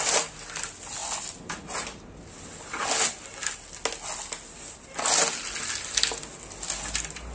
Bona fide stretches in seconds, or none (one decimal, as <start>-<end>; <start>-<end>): 0.0-7.3